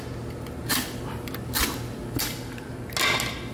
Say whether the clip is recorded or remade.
recorded